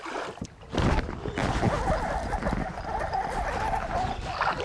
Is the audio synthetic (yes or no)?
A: no